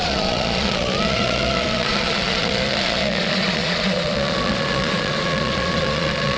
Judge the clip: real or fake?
fake